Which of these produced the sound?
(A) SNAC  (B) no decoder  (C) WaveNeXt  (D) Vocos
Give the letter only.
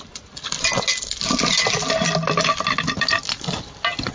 B